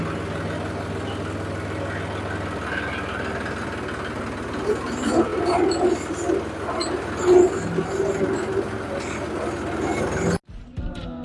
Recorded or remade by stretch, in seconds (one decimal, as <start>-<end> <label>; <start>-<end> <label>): 0.0-11.2 recorded